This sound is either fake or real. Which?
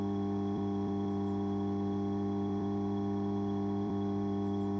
fake